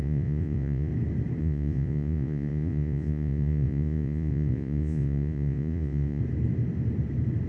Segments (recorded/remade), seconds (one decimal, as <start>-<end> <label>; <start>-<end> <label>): 0.0-0.9 remade; 0.9-1.4 recorded; 1.4-6.2 remade; 6.2-7.5 recorded